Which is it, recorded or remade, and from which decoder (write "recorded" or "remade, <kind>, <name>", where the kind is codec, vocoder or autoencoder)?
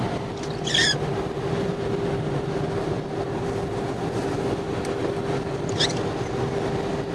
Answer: recorded